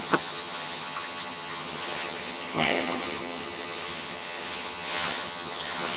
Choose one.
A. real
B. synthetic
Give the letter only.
B